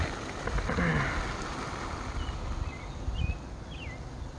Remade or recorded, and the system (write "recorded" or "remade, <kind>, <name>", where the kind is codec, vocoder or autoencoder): recorded